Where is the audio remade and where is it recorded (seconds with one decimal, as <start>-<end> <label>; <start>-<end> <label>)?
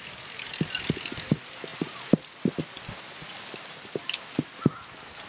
0.0-5.3 recorded